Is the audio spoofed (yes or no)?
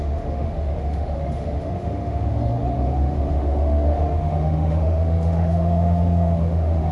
yes